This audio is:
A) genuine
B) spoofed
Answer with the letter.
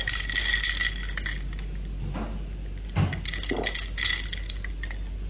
A